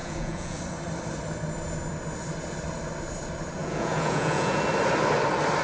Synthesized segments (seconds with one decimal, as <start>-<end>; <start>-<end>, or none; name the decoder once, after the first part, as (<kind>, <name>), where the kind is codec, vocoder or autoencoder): 0.0-0.6 (vocoder, Vocos); 3.6-4.6